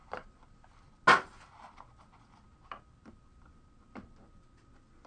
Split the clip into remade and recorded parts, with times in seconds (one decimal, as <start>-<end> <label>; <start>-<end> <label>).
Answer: 0.0-5.1 recorded